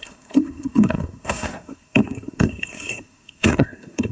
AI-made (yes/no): yes